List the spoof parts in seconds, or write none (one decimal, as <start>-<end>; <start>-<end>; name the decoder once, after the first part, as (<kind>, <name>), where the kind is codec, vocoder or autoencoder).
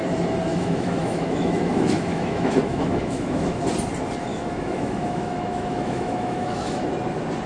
0.5-3.6 (autoencoder, DAC-VAE); 4.3-6.9